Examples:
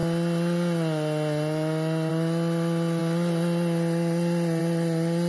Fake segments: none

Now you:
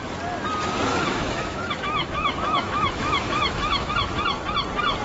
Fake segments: 0.9-3.9 (autoencoder, DAC-VAE)